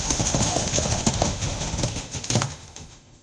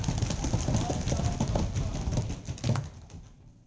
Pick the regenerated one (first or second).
first